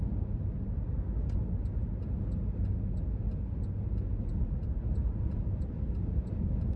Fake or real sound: real